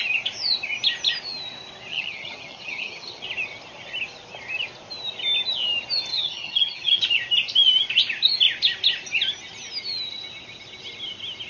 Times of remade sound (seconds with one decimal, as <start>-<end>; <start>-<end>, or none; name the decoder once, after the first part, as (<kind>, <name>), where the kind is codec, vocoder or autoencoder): 1.9-3.2 (vocoder, HiFi-GAN); 6.1-7.0